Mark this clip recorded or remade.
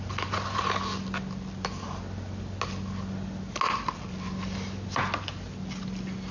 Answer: recorded